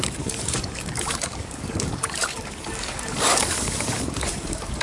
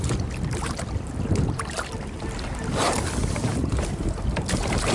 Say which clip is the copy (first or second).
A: first